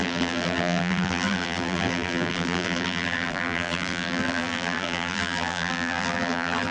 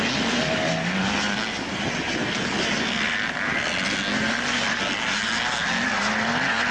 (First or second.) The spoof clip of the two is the first